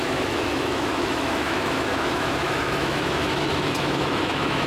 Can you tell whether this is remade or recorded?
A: remade